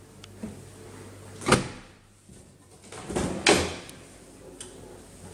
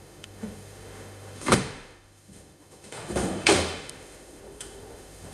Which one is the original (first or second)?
first